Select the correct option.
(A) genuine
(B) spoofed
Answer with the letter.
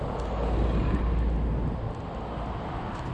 A